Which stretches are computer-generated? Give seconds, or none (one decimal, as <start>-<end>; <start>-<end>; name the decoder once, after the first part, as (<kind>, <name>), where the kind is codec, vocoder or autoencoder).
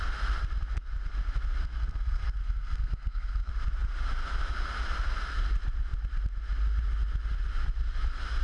1.6-3.5 (codec, SNAC)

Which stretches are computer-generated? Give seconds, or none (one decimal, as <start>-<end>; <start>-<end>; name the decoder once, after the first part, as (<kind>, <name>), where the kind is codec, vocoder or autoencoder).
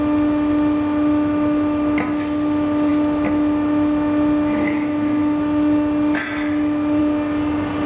none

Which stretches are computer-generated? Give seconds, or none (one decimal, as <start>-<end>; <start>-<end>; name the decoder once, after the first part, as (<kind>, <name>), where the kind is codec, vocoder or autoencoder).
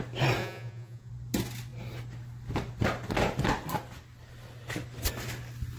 0.4-1.1 (vocoder, Vocos)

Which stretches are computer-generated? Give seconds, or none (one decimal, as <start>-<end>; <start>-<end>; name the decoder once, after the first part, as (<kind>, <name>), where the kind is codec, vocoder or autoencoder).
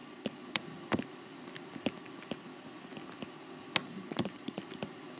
0.0-0.6 (vocoder, Vocos); 3.8-4.6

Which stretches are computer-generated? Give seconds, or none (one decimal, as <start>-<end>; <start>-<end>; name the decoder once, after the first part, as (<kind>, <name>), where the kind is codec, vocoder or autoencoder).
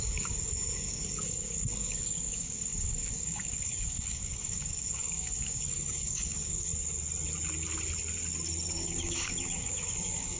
0.0-6.7 (codec, DAC); 8.7-10.4